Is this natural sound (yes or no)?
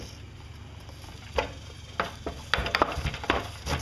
yes